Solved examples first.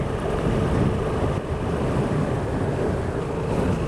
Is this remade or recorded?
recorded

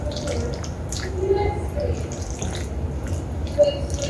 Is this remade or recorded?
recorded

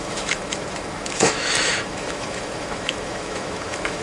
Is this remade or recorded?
remade